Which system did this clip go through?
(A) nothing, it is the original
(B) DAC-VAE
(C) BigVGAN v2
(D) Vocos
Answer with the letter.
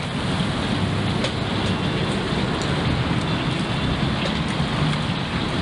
A